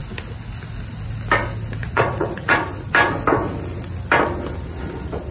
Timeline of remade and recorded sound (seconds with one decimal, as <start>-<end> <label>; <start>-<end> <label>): 0.0-1.8 recorded; 1.8-2.7 remade; 2.7-5.3 recorded